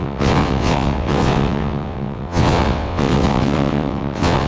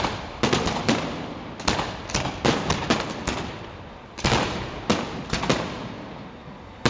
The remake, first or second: first